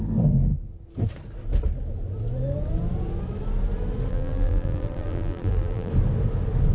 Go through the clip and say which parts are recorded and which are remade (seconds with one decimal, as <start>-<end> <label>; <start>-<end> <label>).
0.0-4.1 recorded; 4.1-5.9 remade; 5.9-6.7 recorded